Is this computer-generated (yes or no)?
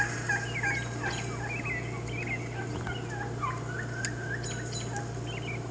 no